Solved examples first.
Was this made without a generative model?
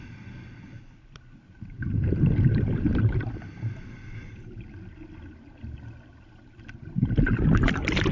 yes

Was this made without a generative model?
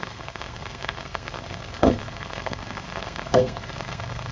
no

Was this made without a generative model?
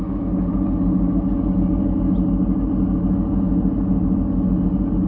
yes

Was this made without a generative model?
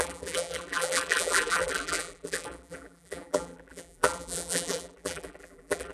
no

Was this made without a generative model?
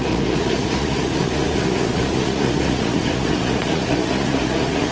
no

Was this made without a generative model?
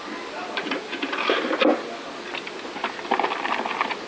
yes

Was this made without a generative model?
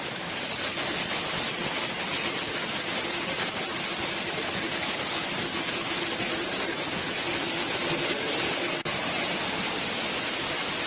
yes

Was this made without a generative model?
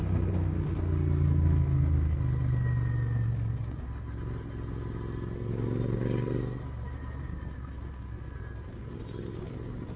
yes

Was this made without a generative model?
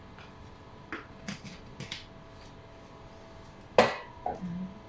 yes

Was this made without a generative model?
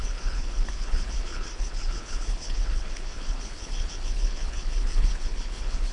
no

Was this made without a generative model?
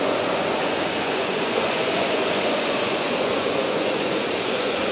no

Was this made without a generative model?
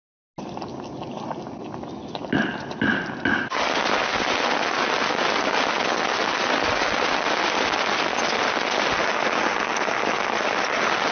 yes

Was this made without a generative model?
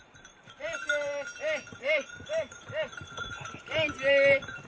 no